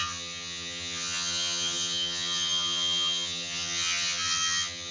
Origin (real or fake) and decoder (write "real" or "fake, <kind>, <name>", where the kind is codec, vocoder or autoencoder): fake, vocoder, HiFi-GAN